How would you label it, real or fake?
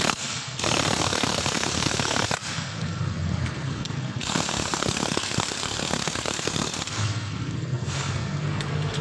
fake